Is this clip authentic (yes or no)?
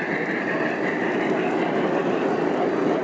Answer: yes